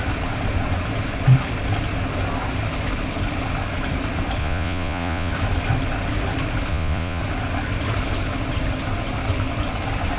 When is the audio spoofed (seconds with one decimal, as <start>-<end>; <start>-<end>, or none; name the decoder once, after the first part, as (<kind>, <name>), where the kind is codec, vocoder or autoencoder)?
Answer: 4.4-5.3 (vocoder, Vocos); 6.7-7.2